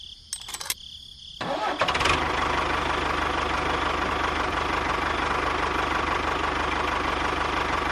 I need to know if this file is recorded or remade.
recorded